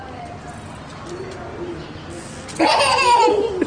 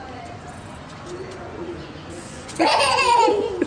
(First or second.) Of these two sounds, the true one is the first